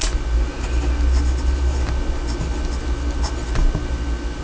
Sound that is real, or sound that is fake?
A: real